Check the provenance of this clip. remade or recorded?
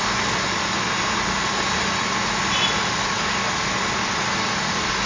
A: recorded